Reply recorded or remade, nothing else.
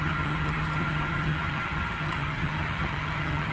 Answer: remade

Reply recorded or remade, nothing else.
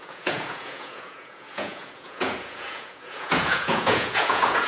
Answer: remade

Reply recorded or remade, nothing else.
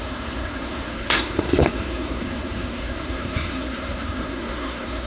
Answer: remade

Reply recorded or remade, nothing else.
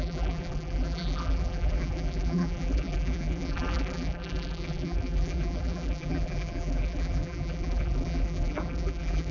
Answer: remade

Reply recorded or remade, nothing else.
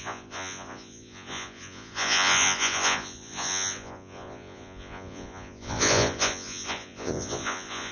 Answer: remade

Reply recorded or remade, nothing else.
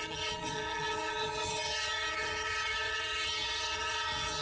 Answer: remade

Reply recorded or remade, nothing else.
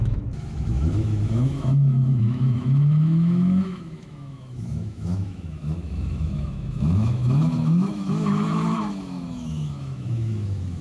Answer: remade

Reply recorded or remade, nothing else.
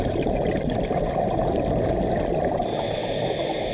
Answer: recorded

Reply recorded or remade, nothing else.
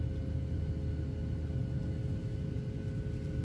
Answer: recorded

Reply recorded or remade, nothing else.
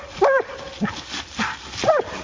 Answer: recorded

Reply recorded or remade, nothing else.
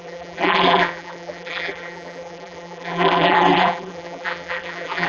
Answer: remade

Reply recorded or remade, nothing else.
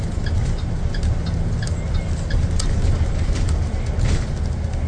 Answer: recorded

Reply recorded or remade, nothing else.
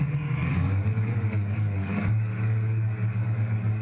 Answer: remade